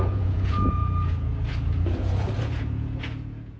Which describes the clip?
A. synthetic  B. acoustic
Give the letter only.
A